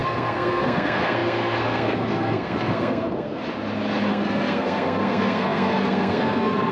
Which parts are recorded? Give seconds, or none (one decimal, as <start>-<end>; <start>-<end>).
3.4-4.1